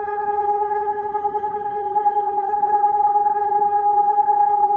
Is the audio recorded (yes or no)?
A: no